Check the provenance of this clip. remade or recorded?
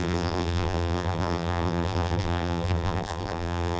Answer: remade